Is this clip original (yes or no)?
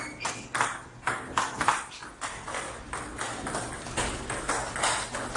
yes